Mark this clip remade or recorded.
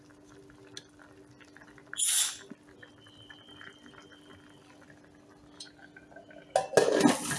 recorded